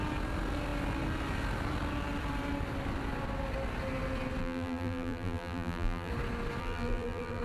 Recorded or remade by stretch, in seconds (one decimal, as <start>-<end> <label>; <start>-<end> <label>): 0.0-4.4 recorded; 4.4-6.1 remade; 6.1-6.6 recorded; 6.6-7.4 remade